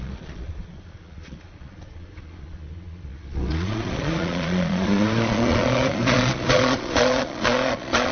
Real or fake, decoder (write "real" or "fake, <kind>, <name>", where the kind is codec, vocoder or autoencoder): fake, vocoder, Vocos